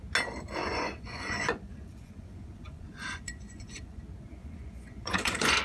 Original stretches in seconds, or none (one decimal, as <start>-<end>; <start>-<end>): 0.0-0.6; 4.0-4.4